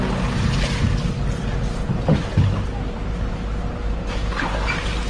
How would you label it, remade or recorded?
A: recorded